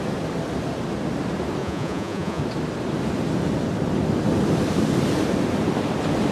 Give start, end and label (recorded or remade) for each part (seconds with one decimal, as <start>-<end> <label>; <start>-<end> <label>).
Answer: 0.0-1.6 recorded; 1.6-2.4 remade; 2.4-6.3 recorded